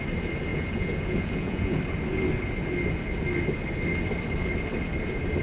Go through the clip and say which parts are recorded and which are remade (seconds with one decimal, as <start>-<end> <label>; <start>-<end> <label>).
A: 0.0-0.5 recorded; 0.5-1.8 remade; 1.8-5.4 recorded